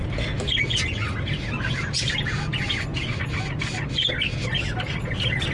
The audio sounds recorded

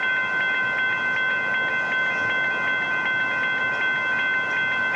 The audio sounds recorded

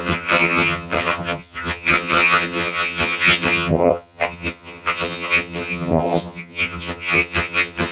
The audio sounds remade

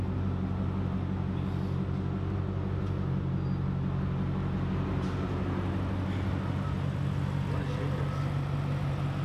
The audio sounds recorded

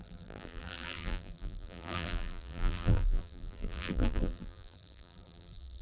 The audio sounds remade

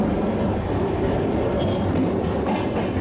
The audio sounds recorded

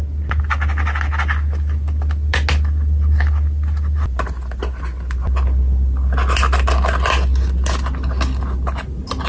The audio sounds recorded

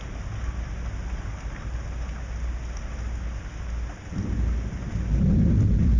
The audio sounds recorded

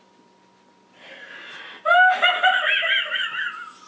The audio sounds recorded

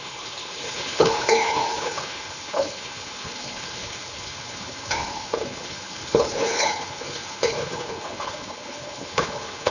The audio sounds remade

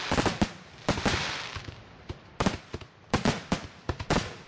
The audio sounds recorded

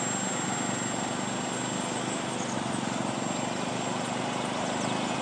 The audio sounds recorded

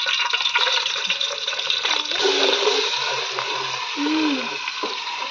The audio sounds remade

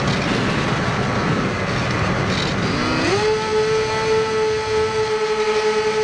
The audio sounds recorded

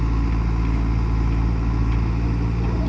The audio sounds recorded